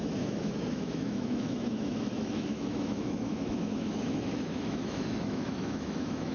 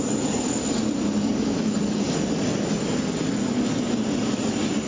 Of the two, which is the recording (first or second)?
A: second